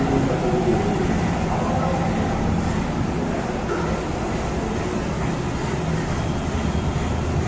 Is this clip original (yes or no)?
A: yes